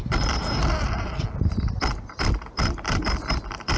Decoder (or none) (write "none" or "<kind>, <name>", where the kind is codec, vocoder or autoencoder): none